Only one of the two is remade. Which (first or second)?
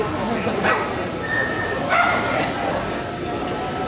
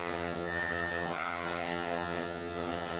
second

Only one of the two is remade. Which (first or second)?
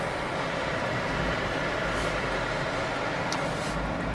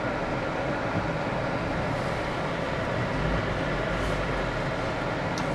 first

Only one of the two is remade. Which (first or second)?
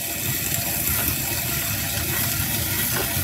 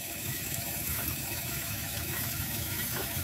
second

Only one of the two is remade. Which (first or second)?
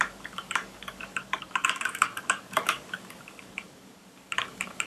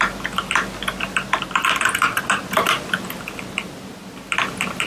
first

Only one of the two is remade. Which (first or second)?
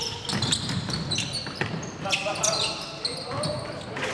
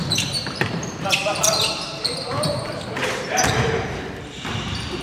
second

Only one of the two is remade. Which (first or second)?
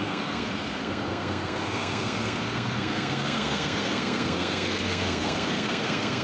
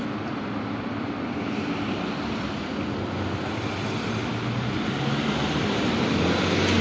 first